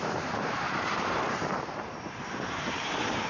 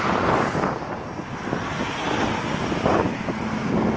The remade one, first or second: first